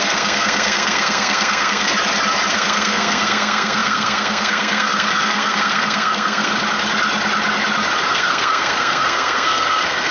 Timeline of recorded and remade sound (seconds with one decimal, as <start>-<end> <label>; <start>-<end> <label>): 0.0-1.9 remade; 1.9-2.5 recorded; 2.5-6.5 remade; 6.5-8.1 recorded; 8.1-10.1 remade